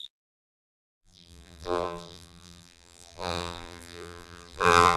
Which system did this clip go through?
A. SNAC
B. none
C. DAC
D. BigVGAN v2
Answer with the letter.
D